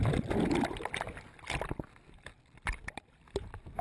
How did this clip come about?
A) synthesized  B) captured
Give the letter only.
B